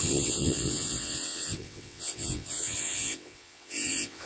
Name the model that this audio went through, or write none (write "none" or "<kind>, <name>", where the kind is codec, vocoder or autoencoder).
vocoder, WaveNeXt